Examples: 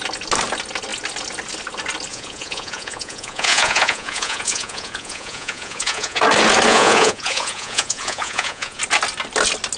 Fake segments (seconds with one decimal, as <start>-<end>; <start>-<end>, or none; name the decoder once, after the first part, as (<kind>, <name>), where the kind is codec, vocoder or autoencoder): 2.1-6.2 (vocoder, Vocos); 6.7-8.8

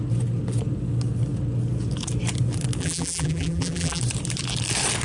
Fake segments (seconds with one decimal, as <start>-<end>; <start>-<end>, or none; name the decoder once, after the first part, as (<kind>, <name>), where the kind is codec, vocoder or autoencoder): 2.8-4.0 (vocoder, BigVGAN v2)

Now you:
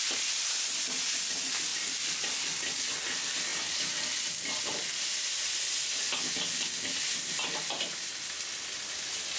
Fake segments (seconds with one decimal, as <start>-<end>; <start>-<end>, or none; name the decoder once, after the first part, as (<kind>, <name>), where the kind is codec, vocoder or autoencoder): none

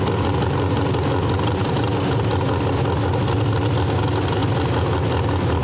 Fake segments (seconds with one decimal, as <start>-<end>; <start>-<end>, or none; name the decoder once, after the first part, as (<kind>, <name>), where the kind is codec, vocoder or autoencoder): none

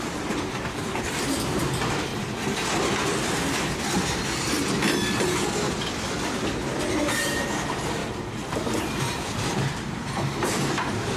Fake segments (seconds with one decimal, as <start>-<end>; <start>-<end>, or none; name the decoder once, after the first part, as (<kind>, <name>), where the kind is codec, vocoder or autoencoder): 0.0-2.1 (vocoder, BigVGAN v2); 7.2-11.2

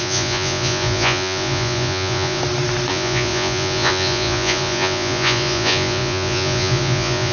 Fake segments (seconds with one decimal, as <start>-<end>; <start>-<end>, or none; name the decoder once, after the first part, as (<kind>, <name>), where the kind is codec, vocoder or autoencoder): 0.0-2.4 (vocoder, Vocos); 2.9-7.3